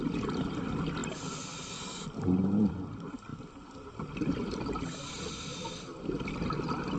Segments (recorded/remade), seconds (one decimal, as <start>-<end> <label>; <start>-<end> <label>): 0.0-7.0 recorded